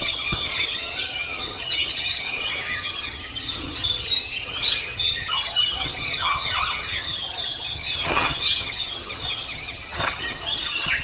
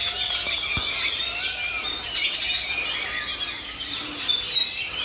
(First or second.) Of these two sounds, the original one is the second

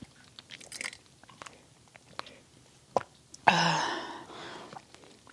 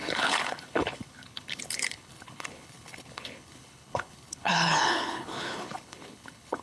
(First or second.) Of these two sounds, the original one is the first